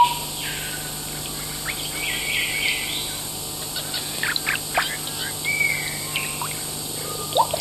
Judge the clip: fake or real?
real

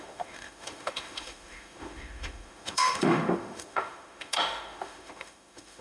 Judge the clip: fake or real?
fake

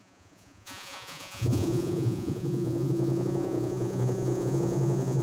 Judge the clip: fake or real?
fake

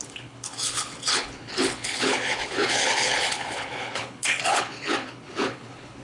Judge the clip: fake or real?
fake